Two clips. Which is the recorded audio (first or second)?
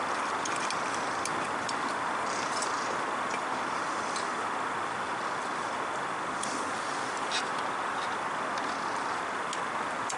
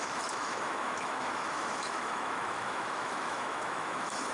first